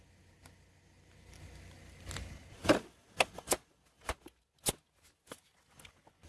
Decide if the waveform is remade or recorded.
recorded